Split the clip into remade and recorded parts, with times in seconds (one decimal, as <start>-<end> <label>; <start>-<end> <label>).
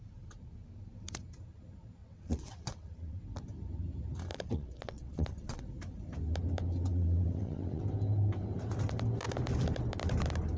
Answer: 0.0-2.0 recorded; 2.0-3.2 remade; 3.2-4.3 recorded; 4.3-5.6 remade; 5.6-6.9 recorded; 6.9-7.8 remade; 7.8-10.6 recorded